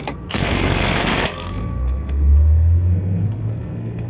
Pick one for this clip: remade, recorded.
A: remade